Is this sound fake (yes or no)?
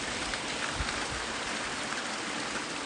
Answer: no